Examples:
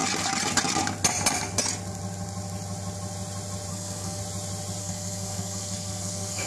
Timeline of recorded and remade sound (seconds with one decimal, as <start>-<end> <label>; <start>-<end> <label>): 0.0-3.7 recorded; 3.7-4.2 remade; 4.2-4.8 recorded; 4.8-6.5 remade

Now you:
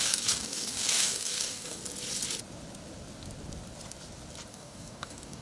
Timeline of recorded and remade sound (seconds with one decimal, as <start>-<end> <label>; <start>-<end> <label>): 0.0-1.8 remade; 1.8-4.5 recorded; 4.5-5.4 remade

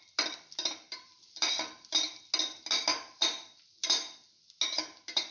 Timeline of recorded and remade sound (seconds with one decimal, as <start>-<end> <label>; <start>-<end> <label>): 0.0-2.9 recorded; 2.9-3.8 remade; 3.8-5.3 recorded

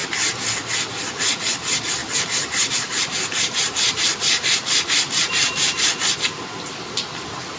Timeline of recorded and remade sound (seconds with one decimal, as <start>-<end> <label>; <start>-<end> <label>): 0.0-2.0 recorded; 2.0-6.1 remade; 6.1-7.6 recorded